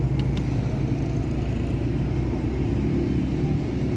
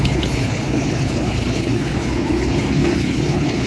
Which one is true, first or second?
first